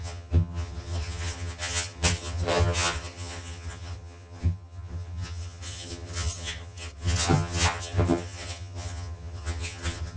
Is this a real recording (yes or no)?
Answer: no